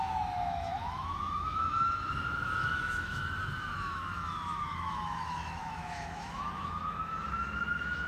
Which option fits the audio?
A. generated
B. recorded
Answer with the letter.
A